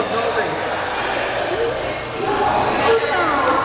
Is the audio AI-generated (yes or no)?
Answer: no